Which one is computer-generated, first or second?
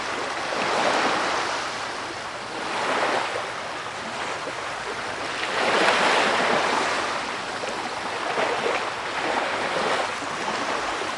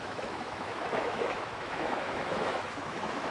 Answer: second